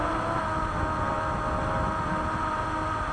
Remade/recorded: recorded